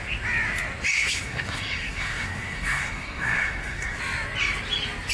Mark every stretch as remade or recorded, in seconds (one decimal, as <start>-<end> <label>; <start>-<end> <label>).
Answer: 0.0-0.9 recorded; 0.9-4.0 remade; 4.0-5.1 recorded